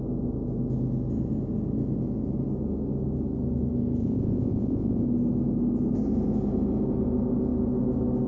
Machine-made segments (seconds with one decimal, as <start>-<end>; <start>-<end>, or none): 4.0-5.0